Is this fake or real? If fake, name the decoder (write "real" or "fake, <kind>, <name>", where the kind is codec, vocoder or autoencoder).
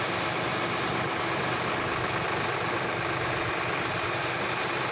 real